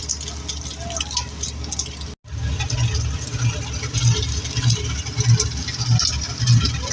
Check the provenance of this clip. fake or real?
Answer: real